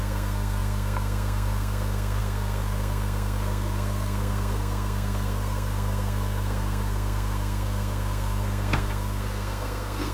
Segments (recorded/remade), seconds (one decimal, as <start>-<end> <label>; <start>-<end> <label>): 0.0-10.1 remade